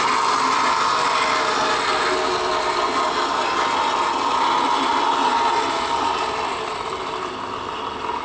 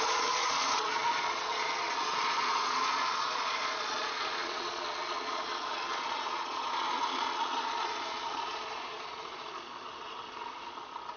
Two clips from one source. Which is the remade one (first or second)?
second